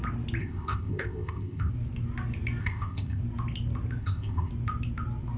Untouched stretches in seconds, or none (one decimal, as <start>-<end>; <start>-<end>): 0.0-0.4; 1.7-2.6; 3.2-4.0; 4.5-5.4